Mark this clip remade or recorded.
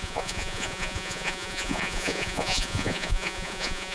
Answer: remade